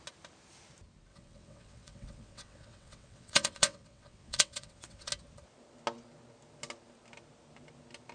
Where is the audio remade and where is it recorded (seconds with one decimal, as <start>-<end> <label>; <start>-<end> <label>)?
0.0-1.1 recorded; 1.1-5.1 remade; 5.1-8.1 recorded